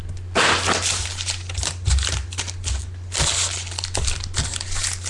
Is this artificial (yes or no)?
no